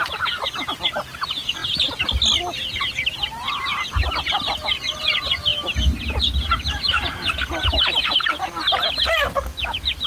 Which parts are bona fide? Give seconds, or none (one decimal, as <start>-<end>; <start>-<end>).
0.0-10.1